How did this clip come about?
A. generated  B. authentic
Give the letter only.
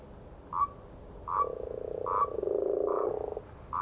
B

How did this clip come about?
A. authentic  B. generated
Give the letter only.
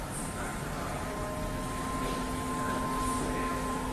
A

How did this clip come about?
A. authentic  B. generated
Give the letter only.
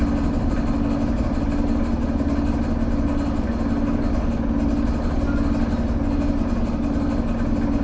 A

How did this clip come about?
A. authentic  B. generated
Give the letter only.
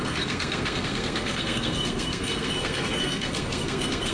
B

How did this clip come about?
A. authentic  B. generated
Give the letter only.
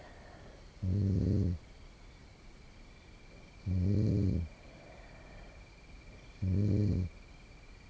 A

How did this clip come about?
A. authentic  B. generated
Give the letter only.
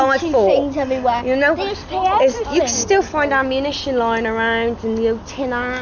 A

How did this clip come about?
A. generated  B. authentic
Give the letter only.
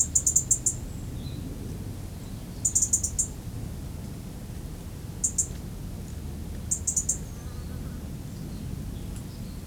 B